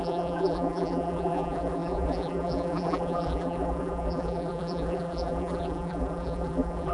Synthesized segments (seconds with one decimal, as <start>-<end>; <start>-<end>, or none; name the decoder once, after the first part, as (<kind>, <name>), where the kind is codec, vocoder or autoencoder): 0.0-6.9 (vocoder, BigVGAN v2)